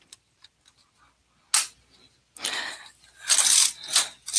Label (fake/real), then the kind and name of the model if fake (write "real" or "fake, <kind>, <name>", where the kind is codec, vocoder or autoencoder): real